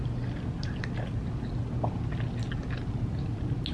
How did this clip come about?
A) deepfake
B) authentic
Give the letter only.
B